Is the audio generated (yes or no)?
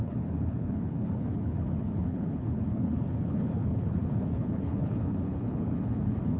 yes